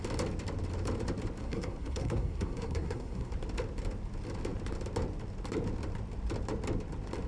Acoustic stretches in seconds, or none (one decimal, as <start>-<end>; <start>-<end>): 0.0-1.4; 3.3-7.3